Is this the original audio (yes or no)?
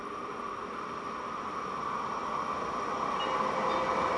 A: yes